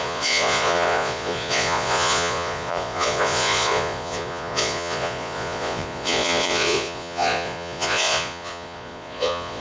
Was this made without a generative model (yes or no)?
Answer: no